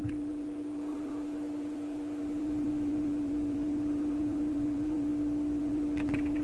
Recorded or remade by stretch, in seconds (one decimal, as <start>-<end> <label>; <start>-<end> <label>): 0.0-5.1 remade; 5.1-5.6 recorded; 5.6-6.4 remade